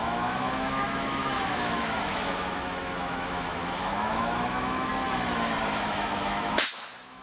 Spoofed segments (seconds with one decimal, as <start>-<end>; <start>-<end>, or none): 0.0-4.9; 5.8-7.2